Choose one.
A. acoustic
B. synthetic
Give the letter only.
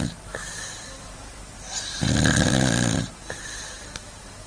A